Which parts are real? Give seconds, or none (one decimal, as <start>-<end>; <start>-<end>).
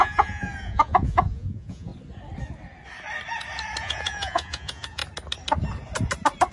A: 1.9-3.8; 5.0-6.5